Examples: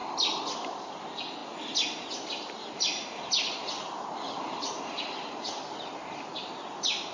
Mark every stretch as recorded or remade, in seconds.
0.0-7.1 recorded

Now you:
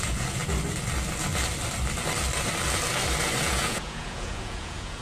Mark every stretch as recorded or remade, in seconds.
0.0-0.4 remade; 0.4-3.4 recorded; 3.4-5.0 remade